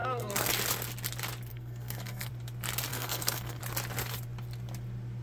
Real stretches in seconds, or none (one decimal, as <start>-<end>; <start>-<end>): 0.5-1.5; 2.3-2.9; 3.6-5.2